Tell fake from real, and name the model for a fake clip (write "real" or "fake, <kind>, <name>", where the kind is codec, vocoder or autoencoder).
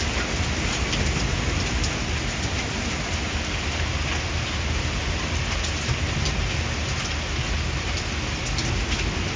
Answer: real